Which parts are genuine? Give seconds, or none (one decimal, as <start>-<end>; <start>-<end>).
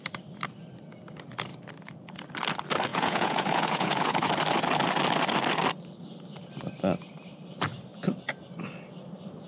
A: 0.0-2.9; 4.3-9.5